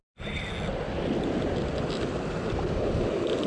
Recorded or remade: recorded